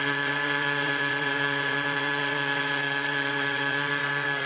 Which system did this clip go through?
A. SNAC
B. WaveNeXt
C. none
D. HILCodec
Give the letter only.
B